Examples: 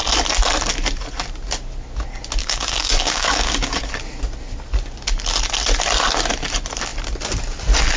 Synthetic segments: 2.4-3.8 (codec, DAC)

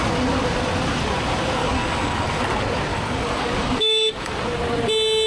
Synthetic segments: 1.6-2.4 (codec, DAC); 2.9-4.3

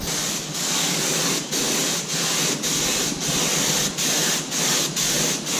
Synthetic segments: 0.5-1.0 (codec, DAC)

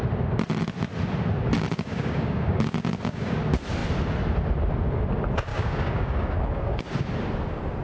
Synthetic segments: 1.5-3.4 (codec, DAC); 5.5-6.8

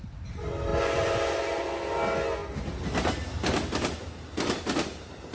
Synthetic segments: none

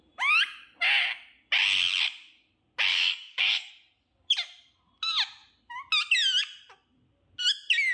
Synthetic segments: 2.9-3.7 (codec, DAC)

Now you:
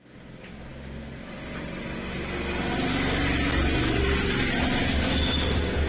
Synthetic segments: 4.8-5.9 (codec, DAC)